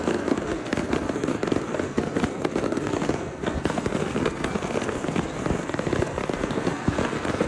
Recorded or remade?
remade